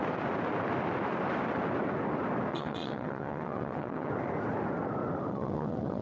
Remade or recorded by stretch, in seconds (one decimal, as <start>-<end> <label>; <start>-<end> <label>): 0.0-2.5 recorded; 2.5-4.1 remade; 4.1-5.3 recorded; 5.3-6.0 remade